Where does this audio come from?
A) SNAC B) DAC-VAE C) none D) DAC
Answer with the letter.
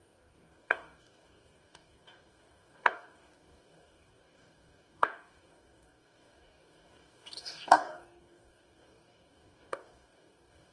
D